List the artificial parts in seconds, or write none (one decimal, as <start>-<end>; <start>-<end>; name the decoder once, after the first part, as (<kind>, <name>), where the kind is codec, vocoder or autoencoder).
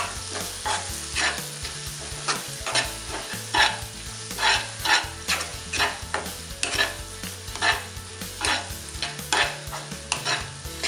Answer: 5.5-6.2 (vocoder, Vocos)